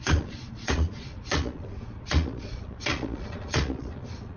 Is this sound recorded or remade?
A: remade